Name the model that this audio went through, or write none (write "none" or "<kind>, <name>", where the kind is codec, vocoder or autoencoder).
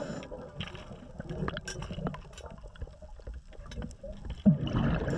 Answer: none